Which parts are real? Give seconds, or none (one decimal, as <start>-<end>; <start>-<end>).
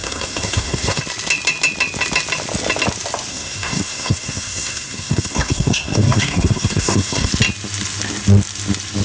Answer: 1.0-3.3; 7.3-9.0